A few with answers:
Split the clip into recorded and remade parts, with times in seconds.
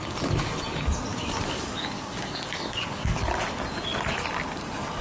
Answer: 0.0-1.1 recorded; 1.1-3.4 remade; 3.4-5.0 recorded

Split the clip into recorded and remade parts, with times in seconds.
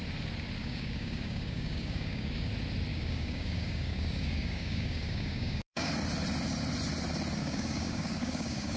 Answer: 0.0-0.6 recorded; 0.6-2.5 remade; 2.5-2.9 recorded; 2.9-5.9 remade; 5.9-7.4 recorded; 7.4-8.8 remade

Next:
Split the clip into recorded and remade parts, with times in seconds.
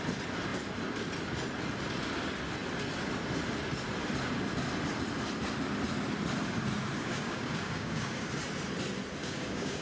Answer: 0.0-7.0 recorded; 7.0-8.3 remade; 8.3-9.2 recorded; 9.2-9.8 remade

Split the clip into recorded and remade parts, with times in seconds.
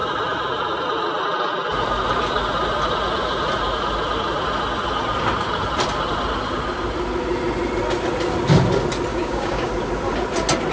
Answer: 0.0-9.1 recorded; 9.1-9.7 remade; 9.7-10.7 recorded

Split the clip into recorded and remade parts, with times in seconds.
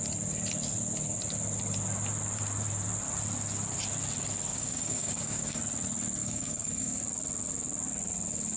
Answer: 0.0-4.5 recorded; 4.5-5.6 remade; 5.6-6.2 recorded; 6.2-7.0 remade; 7.0-8.6 recorded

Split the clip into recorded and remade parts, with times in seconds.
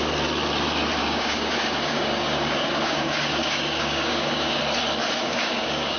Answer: 0.0-1.0 recorded; 1.0-4.6 remade; 4.6-5.0 recorded; 5.0-6.0 remade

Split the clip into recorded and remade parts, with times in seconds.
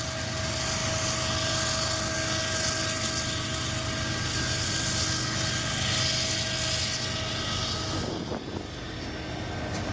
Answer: 0.0-9.9 recorded